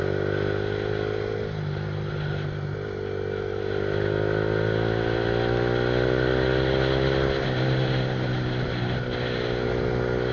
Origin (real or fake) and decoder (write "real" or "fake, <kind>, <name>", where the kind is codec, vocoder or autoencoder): real